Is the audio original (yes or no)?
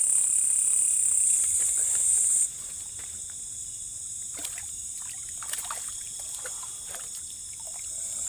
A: no